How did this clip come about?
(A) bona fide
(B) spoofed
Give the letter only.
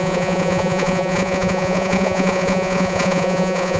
B